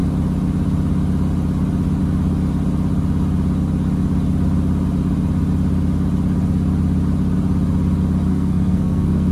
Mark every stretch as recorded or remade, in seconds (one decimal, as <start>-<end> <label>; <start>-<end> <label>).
0.0-8.3 recorded; 8.3-9.3 remade